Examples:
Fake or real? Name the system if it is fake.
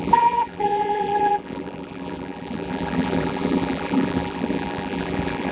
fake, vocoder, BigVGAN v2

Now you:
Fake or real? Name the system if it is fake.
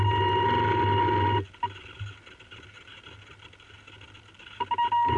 real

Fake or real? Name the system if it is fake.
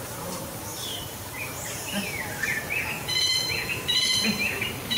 fake, vocoder, BigVGAN v2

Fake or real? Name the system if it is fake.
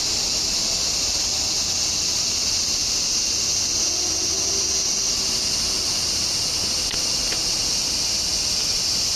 real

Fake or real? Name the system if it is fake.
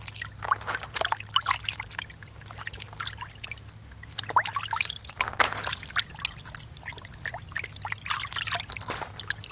real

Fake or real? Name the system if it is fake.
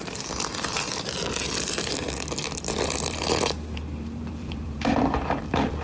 fake, vocoder, BigVGAN v2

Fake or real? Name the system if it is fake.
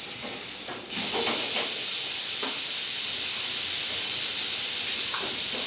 real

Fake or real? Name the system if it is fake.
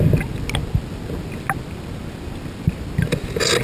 real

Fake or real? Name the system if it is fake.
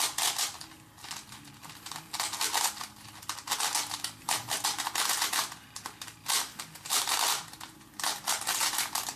real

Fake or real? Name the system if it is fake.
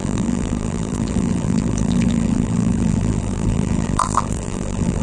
fake, vocoder, BigVGAN v2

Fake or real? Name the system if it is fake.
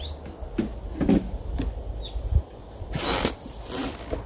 real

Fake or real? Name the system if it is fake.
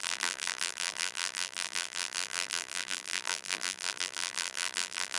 fake, vocoder, BigVGAN v2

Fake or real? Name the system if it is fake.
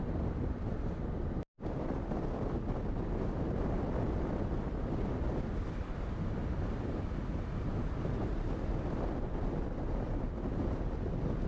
real